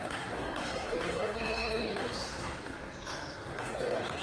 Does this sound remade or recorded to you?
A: remade